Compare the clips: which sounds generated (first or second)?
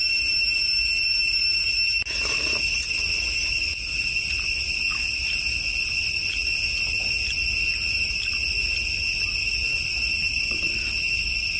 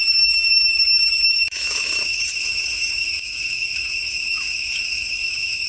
second